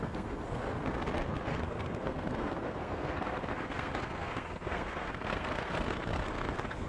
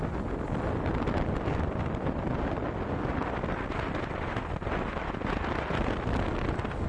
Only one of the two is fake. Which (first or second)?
first